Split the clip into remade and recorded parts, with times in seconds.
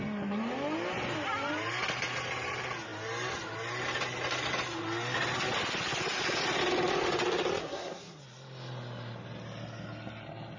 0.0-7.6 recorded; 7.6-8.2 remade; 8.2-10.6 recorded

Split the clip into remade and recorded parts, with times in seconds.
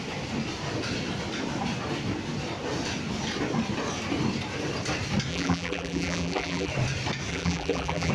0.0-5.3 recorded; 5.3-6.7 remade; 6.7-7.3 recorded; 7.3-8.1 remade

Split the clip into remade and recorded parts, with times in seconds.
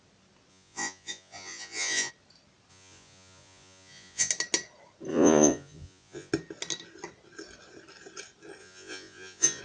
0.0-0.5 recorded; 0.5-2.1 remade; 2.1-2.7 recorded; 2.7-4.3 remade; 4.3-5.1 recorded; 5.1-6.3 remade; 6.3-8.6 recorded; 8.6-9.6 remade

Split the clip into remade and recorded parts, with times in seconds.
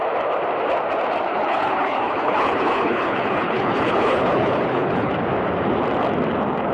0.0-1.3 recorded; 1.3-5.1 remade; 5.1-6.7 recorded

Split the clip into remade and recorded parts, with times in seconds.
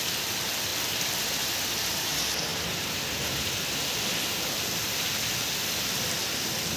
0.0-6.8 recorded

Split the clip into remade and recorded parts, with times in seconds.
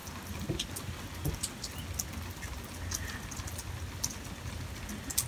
0.0-5.3 recorded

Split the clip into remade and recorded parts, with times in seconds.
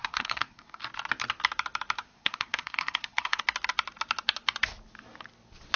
0.0-0.8 remade; 0.8-2.0 recorded; 2.0-3.4 remade; 3.4-5.8 recorded